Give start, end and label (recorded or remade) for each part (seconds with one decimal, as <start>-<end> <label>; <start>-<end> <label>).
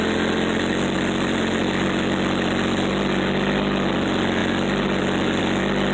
0.0-5.9 recorded